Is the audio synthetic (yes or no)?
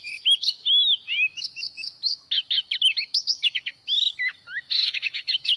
yes